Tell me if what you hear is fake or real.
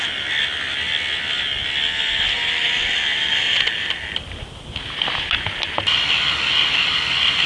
real